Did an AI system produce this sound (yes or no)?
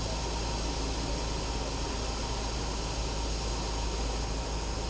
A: no